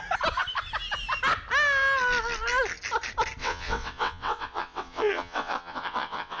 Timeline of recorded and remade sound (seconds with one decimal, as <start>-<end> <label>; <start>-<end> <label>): 0.0-3.4 recorded; 3.4-6.4 remade